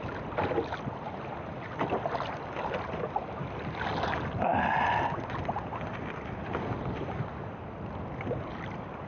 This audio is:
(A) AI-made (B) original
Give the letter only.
B